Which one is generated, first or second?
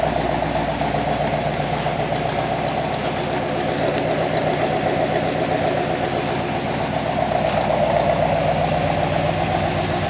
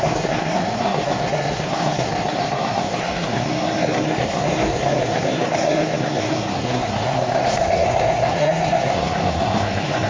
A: second